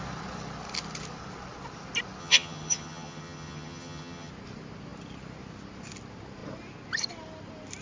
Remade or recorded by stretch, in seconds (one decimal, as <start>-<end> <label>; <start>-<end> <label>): 0.0-2.2 recorded; 2.2-4.3 remade; 4.3-7.8 recorded

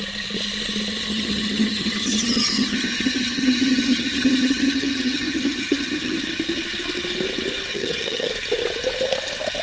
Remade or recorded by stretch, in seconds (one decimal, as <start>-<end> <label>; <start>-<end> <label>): 0.0-1.1 recorded; 1.1-6.2 remade; 6.2-7.7 recorded; 7.7-8.3 remade; 8.3-9.6 recorded

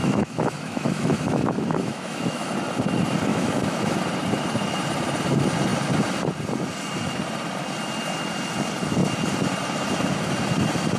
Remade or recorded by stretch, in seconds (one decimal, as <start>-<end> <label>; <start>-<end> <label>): 0.0-2.5 remade; 2.5-3.3 recorded; 3.3-4.0 remade; 4.0-11.0 recorded

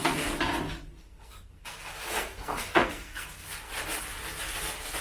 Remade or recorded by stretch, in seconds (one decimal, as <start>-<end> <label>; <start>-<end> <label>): 0.0-0.5 remade; 0.5-1.0 recorded; 1.0-3.7 remade; 3.7-5.0 recorded

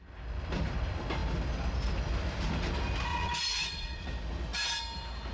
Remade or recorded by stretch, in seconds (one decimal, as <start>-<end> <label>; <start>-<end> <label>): 0.0-3.1 recorded; 3.1-4.1 remade; 4.1-5.3 recorded

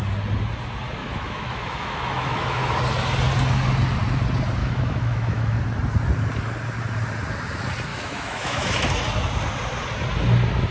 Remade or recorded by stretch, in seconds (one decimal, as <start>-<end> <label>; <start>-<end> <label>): 0.0-1.0 recorded; 1.0-2.8 remade; 2.8-4.6 recorded; 4.6-5.6 remade; 5.6-7.9 recorded; 7.9-8.9 remade; 8.9-10.7 recorded